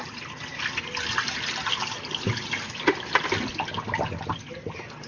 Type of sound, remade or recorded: recorded